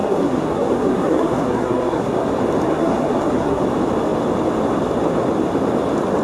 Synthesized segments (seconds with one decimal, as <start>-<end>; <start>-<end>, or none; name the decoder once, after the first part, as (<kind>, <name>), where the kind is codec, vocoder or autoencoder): 0.0-2.3 (codec, SNAC); 2.7-3.6